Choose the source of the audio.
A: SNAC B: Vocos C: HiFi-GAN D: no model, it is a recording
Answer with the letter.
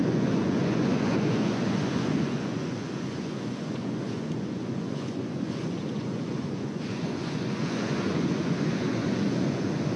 B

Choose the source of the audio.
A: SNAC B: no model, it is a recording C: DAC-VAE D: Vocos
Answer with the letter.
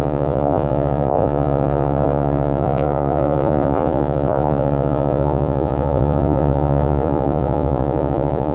D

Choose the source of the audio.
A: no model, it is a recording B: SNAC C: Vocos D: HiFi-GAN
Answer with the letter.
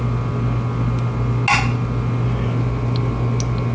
A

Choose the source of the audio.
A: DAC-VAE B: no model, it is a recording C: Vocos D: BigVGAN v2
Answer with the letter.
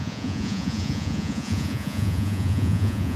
C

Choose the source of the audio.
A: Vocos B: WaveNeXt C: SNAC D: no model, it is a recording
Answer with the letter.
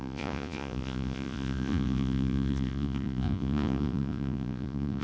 A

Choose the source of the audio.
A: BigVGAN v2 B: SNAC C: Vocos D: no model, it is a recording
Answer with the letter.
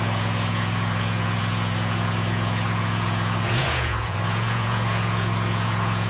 C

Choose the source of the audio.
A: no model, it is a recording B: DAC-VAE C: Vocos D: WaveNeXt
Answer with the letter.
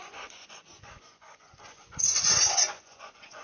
C